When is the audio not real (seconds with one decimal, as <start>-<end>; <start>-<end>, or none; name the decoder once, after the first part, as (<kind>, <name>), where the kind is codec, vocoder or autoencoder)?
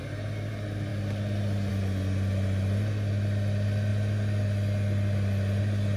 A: none